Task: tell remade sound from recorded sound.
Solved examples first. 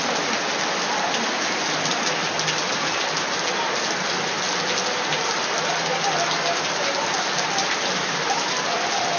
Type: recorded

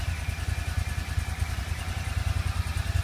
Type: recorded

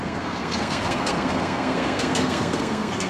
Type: remade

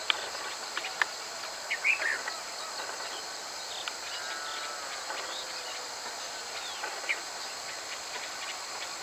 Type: recorded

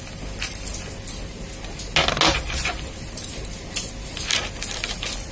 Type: recorded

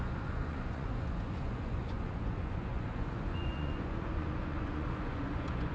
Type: remade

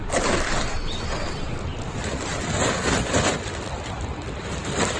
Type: recorded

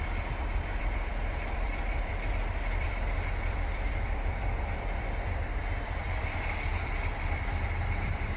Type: remade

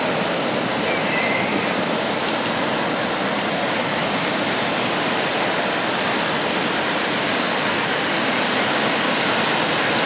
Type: recorded